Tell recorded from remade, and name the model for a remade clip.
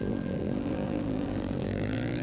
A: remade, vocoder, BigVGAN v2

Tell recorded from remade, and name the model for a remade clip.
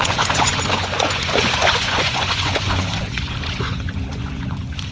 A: remade, vocoder, Vocos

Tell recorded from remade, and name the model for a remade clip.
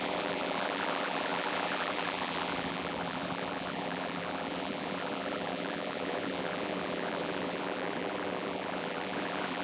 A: remade, vocoder, BigVGAN v2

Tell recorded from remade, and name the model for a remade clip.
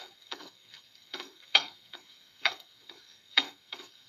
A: remade, codec, SNAC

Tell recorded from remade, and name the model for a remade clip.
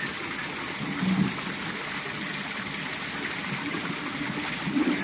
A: recorded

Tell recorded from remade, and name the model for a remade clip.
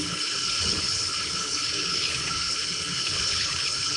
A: remade, codec, HILCodec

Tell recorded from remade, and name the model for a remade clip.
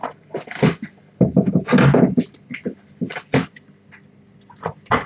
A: recorded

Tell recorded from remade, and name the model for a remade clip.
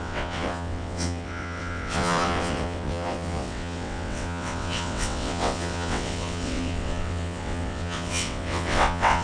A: remade, vocoder, WaveNeXt